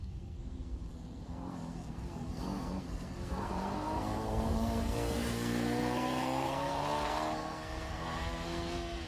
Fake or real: fake